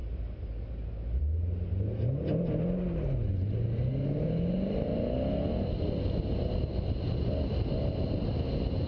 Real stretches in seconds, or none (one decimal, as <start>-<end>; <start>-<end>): 0.0-8.9